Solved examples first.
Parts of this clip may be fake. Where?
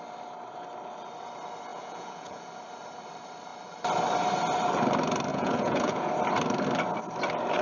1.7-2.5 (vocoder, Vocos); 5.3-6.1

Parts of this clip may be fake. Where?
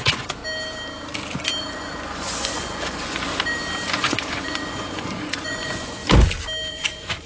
0.0-0.4 (vocoder, Vocos); 1.6-3.3; 3.9-6.0; 6.7-7.3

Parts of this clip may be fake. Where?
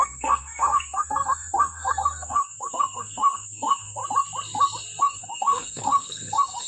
0.0-4.0 (codec, SNAC); 5.0-6.7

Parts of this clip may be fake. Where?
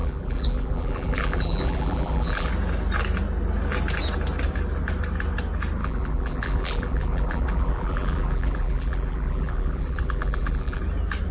0.0-2.5 (vocoder, BigVGAN v2); 5.8-10.8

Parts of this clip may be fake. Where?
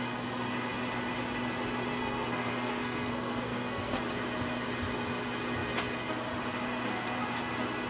2.0-4.0 (codec, SNAC)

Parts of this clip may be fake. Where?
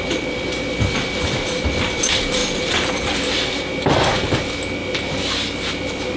1.2-2.0 (vocoder, BigVGAN v2); 2.4-3.6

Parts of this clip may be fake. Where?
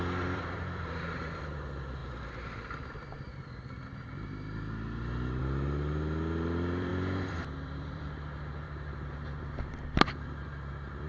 0.0-2.0 (vocoder, BigVGAN v2); 5.4-6.9; 7.4-11.1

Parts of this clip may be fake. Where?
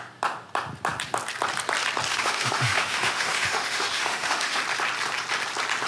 2.1-4.6 (autoencoder, DAC-VAE)